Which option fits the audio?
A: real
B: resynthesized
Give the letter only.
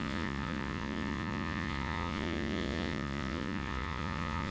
B